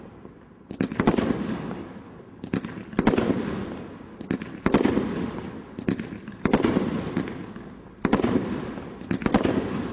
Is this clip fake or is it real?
real